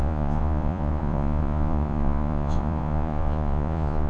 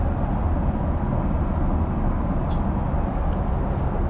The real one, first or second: second